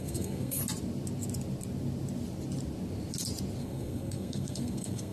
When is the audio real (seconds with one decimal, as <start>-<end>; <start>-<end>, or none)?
0.6-3.6